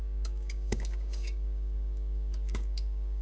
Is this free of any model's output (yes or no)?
no